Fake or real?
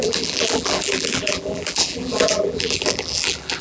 fake